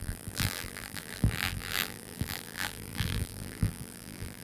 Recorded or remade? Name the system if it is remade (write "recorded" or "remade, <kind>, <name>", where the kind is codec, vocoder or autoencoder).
remade, vocoder, BigVGAN v2